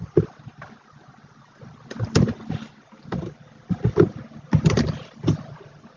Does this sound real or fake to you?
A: real